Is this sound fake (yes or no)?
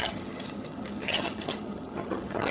yes